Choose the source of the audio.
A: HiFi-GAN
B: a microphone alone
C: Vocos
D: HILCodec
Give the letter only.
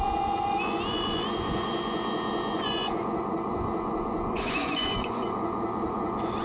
C